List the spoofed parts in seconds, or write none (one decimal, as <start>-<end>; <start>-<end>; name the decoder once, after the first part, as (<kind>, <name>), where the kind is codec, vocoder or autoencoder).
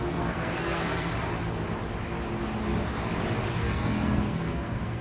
0.0-1.1 (codec, SNAC); 3.5-5.0